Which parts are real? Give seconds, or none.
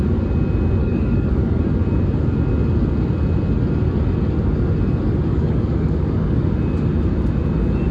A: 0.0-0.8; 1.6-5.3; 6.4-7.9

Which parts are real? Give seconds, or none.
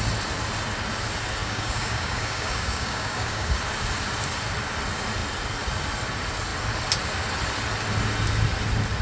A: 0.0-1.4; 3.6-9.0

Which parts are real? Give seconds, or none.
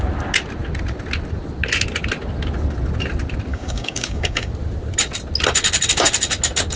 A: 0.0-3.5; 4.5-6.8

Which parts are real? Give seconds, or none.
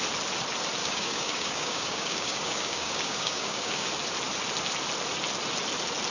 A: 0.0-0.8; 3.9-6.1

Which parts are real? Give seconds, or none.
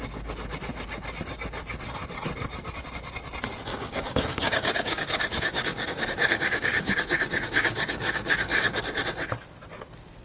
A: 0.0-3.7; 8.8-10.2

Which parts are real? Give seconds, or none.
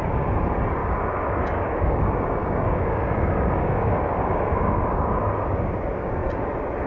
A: 0.0-0.8; 2.0-2.4; 5.2-6.9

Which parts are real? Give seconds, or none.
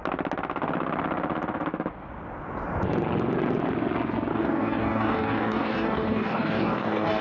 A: 0.0-4.3